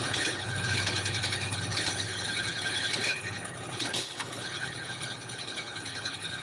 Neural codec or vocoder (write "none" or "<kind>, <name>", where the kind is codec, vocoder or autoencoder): codec, HILCodec